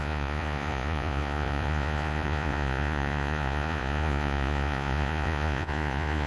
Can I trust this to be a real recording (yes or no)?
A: no